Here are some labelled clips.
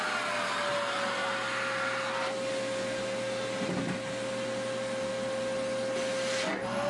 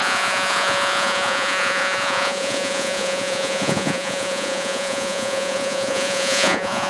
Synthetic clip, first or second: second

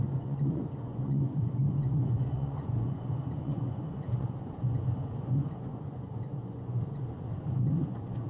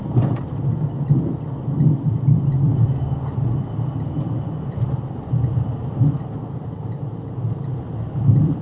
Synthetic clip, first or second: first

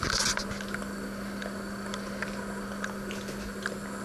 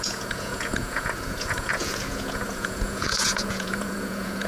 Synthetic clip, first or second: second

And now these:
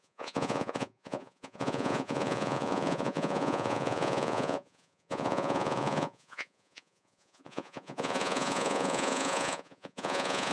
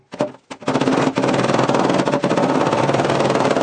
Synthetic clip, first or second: first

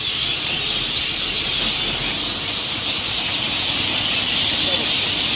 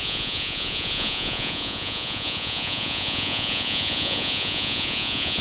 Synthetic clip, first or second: second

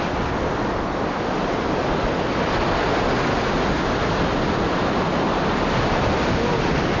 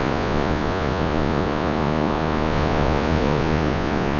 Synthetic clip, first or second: second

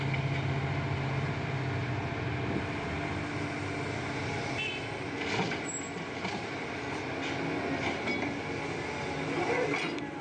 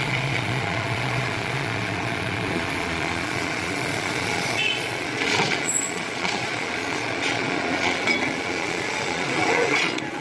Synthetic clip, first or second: second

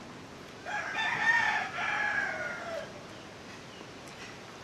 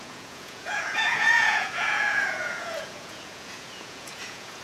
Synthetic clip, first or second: second